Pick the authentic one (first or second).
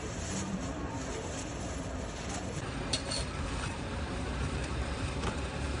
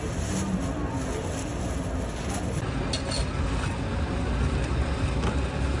second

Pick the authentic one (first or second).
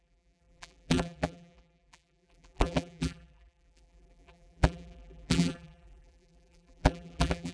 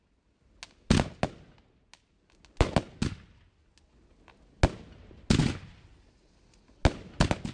second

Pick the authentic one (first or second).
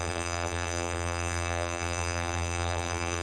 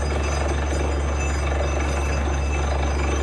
second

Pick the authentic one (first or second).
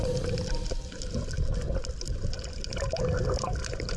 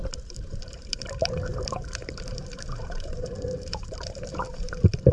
first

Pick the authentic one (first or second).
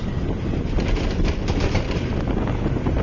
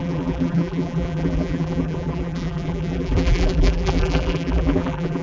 first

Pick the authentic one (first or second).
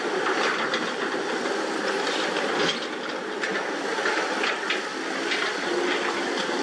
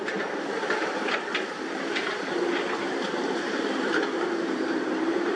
first